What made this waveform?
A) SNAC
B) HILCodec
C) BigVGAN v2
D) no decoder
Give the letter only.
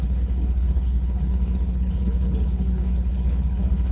B